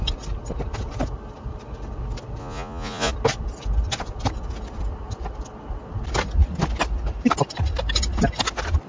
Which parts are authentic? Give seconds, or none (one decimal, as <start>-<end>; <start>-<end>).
0.0-2.4; 3.1-8.9